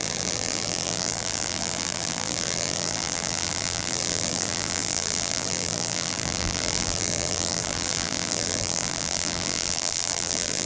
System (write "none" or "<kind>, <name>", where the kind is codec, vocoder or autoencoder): vocoder, BigVGAN v2